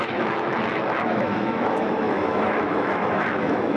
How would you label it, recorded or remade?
remade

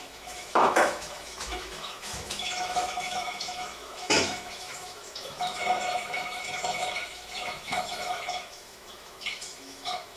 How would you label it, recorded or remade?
remade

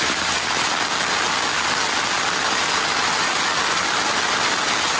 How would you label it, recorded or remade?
recorded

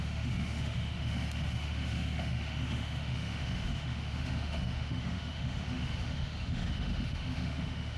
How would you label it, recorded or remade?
remade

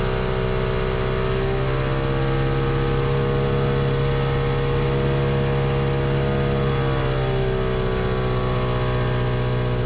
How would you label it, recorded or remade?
recorded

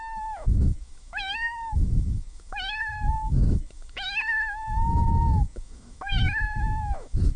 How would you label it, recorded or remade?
remade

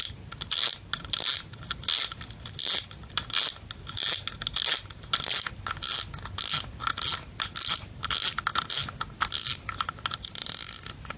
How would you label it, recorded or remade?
recorded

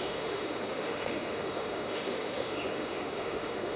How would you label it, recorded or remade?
remade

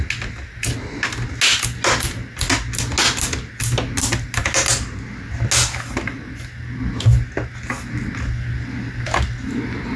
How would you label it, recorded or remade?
recorded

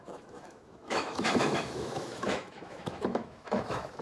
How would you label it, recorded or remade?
remade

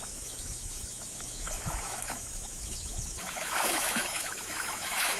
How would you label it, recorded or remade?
remade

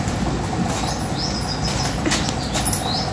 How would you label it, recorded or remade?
recorded